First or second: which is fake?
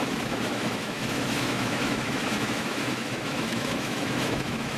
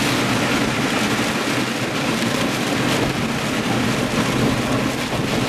first